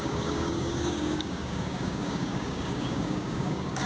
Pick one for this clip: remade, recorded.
remade